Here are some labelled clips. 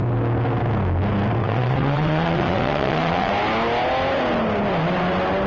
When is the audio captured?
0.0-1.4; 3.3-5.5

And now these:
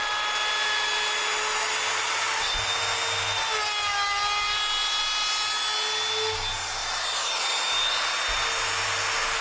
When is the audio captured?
0.0-9.4

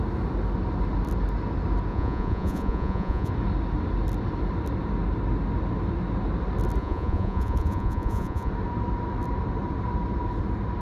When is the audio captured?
0.0-1.9; 3.3-6.8; 8.5-10.8

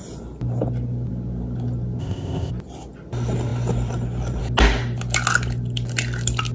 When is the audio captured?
0.0-2.0; 2.5-6.5

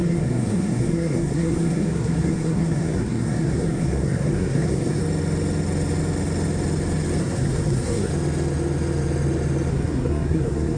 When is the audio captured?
5.0-7.2; 8.1-9.7

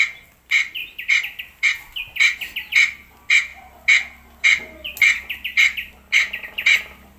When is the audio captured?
0.0-7.2